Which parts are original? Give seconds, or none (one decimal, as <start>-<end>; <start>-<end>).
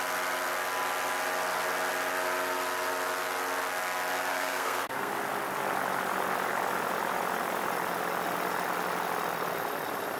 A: 0.0-4.3; 5.1-10.2